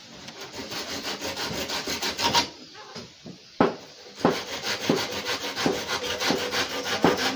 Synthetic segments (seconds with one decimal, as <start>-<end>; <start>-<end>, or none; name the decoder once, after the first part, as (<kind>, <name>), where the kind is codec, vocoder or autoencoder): 0.6-1.1 (vocoder, BigVGAN v2); 4.5-5.0